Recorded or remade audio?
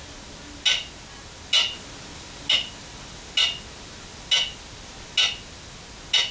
recorded